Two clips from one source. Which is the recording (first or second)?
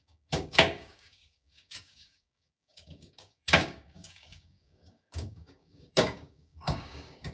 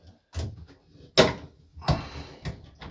second